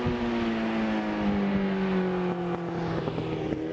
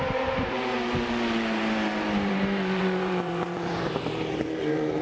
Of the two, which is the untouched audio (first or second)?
first